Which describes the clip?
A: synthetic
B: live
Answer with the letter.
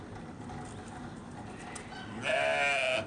B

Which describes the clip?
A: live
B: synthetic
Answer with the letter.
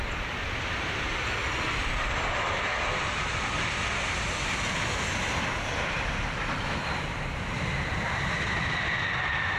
A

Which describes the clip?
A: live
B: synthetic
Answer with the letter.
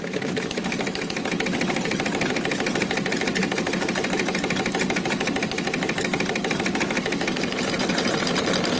A